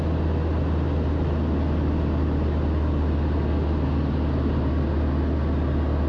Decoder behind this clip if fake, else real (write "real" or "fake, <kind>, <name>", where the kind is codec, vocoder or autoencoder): real